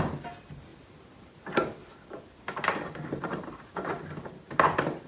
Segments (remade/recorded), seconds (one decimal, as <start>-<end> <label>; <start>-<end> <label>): 0.0-5.1 recorded